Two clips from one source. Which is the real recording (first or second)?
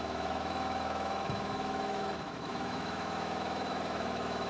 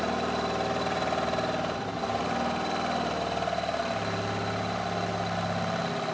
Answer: second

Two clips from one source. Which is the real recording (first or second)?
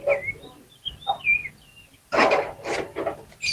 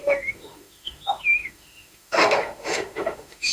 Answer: first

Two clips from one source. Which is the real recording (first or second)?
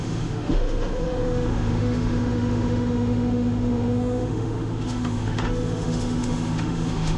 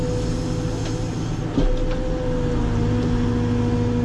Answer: second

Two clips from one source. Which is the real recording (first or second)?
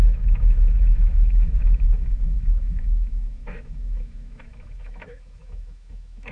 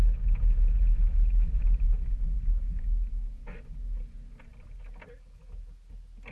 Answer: second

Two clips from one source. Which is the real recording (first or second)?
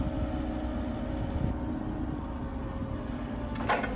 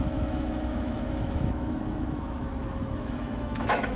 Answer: first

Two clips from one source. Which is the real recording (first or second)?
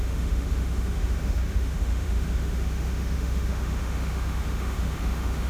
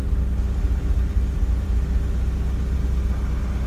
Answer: second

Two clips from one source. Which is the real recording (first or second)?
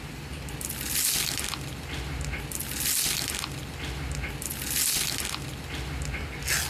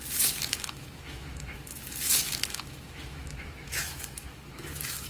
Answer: first